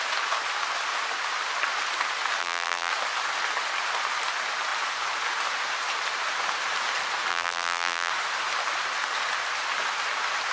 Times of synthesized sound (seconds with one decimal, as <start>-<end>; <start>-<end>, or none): 2.4-2.9; 7.3-8.1